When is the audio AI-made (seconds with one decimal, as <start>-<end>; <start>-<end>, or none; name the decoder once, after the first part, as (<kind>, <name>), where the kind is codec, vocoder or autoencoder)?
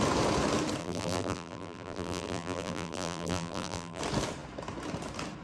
0.8-4.0 (vocoder, BigVGAN v2)